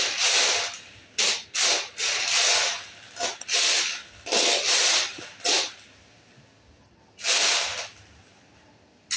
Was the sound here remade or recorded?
recorded